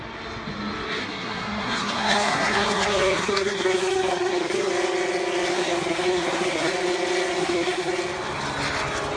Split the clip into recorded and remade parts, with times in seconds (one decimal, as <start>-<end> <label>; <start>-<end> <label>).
0.0-1.0 recorded; 1.0-4.7 remade; 4.7-5.5 recorded; 5.5-6.7 remade; 6.7-7.4 recorded; 7.4-7.9 remade; 7.9-9.2 recorded